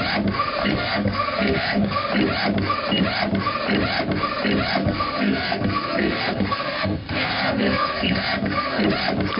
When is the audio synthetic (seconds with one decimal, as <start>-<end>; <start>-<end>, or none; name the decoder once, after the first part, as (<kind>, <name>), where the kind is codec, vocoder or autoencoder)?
0.6-2.1 (codec, SNAC); 4.8-8.8